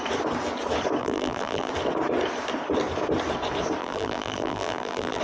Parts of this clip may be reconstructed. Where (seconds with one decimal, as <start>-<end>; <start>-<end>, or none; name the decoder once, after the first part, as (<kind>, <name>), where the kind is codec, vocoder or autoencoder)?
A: 1.0-1.7 (vocoder, BigVGAN v2); 3.8-5.2

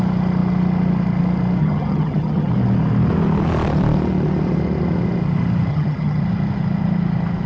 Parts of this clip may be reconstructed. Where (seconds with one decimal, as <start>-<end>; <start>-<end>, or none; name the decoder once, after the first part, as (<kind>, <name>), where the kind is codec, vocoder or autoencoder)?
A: 1.6-2.5 (vocoder, HiFi-GAN); 5.7-6.2

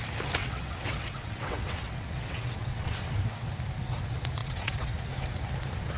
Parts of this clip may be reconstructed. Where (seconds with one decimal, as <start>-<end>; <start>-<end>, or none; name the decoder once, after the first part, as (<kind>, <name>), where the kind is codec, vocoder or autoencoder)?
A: 0.4-3.5 (vocoder, WaveNeXt); 4.4-5.1

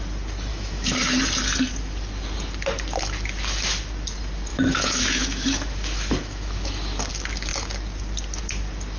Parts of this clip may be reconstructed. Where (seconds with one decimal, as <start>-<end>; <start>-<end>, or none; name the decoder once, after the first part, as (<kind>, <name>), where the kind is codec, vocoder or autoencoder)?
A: 0.5-1.2 (autoencoder, DAC-VAE); 4.5-7.1

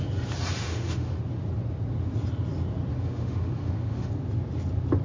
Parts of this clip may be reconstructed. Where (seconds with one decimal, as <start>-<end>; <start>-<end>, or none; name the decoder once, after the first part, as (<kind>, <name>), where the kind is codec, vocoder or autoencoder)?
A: 0.6-1.2 (autoencoder, DAC-VAE); 2.9-4.1

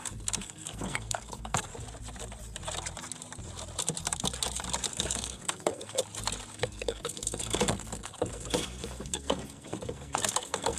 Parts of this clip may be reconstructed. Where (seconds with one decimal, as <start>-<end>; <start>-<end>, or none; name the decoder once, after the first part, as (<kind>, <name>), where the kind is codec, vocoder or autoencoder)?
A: 0.0-1.7 (codec, SNAC); 4.9-6.0; 6.5-10.8

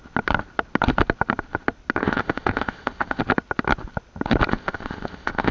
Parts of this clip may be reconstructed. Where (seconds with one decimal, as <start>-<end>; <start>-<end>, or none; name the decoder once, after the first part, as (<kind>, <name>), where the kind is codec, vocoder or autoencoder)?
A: 2.0-3.2 (codec, ZipCodec); 4.5-5.5